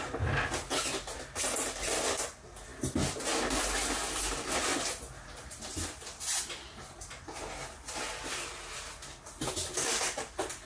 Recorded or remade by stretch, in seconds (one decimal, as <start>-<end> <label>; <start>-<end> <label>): 0.0-10.7 recorded